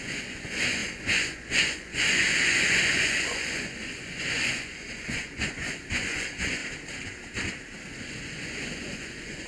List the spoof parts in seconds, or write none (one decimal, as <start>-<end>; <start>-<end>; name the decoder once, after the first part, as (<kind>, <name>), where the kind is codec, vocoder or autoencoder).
0.0-6.6 (vocoder, Vocos); 7.9-9.5